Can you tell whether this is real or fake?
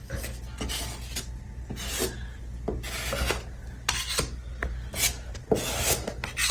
real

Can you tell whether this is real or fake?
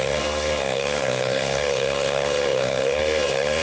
fake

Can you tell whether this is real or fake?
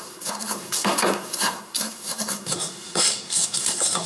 fake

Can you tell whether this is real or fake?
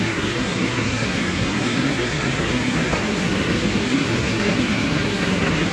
fake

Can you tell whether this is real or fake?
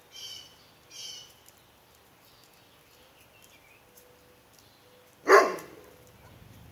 real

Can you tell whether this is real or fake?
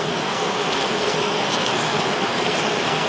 fake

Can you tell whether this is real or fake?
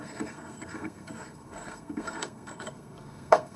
fake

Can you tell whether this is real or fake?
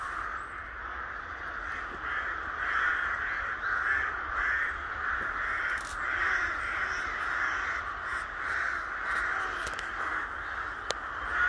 real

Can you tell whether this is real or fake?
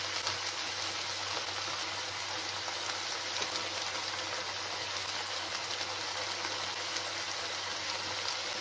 real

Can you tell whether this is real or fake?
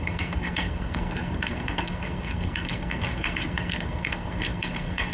fake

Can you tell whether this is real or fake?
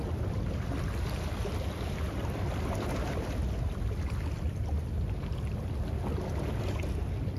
real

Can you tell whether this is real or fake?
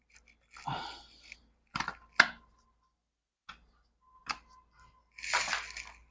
real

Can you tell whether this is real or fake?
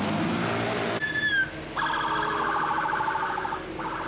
real